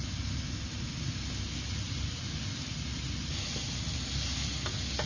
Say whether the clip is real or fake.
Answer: real